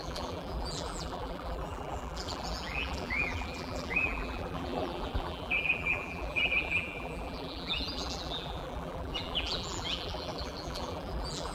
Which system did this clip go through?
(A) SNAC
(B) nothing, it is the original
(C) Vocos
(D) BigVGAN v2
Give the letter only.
D